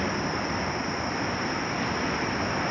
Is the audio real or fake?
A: real